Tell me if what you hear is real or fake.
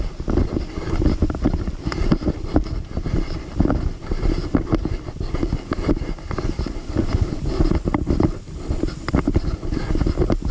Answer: real